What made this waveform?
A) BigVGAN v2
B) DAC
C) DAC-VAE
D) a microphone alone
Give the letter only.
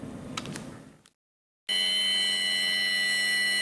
D